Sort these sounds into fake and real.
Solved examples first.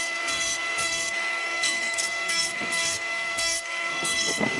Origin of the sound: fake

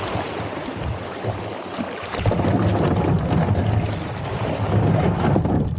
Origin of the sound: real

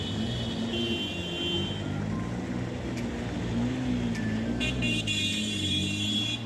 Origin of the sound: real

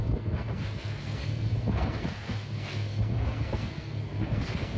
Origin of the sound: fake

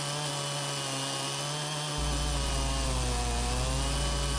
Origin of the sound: real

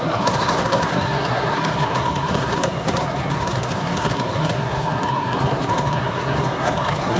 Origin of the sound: fake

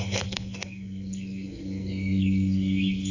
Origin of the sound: fake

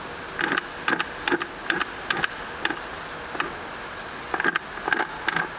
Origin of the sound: real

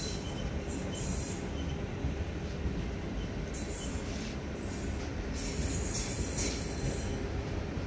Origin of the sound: real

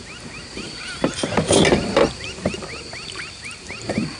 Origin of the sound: real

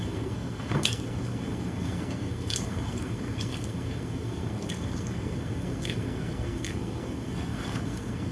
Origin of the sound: fake